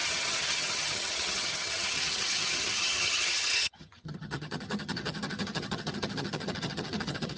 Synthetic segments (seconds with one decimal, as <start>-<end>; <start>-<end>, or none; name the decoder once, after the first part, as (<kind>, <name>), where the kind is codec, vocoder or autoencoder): 0.0-7.4 (vocoder, HiFi-GAN)